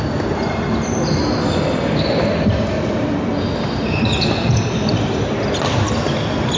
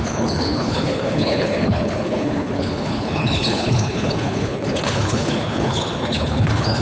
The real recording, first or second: first